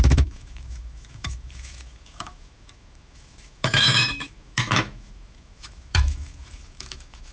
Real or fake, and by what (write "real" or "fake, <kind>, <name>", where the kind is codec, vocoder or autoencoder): fake, autoencoder, DAC-VAE